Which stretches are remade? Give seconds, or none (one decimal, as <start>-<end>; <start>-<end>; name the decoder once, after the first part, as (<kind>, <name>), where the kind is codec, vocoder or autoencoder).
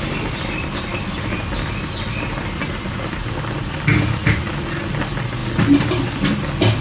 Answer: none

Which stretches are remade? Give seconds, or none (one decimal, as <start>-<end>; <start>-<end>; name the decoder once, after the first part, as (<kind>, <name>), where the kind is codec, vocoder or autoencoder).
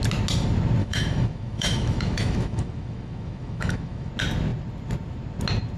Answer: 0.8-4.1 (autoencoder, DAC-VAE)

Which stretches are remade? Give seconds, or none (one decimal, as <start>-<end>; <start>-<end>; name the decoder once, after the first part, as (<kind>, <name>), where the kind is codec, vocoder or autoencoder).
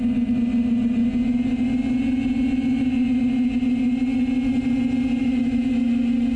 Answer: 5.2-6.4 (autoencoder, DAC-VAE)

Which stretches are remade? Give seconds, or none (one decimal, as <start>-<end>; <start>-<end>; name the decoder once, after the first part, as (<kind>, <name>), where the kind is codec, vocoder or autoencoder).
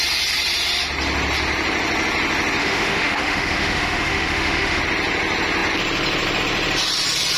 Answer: 2.6-4.8 (autoencoder, DAC-VAE)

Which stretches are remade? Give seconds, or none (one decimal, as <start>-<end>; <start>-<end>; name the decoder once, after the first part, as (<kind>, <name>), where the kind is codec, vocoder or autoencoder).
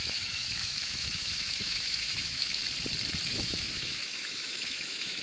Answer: 0.0-2.6 (autoencoder, DAC-VAE); 3.3-5.2